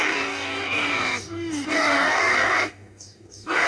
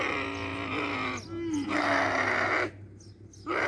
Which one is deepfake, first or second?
first